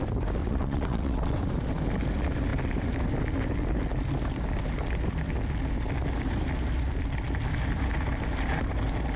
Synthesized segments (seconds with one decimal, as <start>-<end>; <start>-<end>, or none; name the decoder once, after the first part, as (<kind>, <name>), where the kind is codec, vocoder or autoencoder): 0.4-1.4 (vocoder, WaveNeXt)